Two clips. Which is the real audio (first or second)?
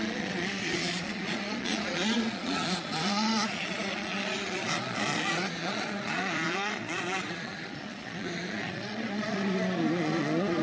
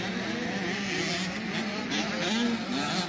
second